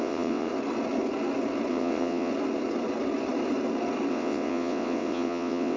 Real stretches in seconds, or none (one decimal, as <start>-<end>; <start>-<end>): 0.5-1.7; 2.3-4.1